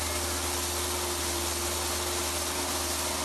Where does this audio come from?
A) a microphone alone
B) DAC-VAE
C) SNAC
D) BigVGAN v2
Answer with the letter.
A